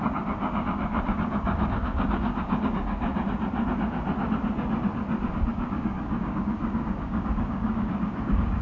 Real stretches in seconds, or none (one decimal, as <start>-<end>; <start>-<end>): 3.1-5.5